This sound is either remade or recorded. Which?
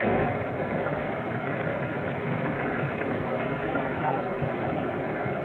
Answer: remade